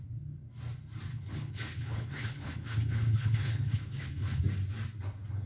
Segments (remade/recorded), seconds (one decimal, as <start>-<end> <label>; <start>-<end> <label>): 0.0-1.1 recorded; 1.1-4.4 remade; 4.4-5.5 recorded